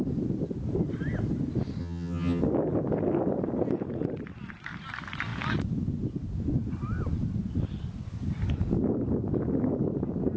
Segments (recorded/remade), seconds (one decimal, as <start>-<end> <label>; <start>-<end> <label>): 0.0-1.8 recorded; 1.8-2.4 remade; 2.4-10.4 recorded